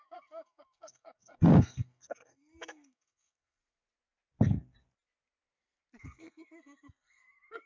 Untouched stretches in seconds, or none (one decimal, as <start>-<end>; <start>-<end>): 3.6-6.0